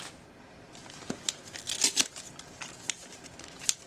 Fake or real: real